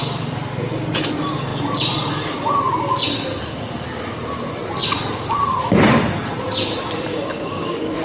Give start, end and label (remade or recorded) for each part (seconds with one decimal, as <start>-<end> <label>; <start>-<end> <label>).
0.0-7.1 recorded; 7.1-8.0 remade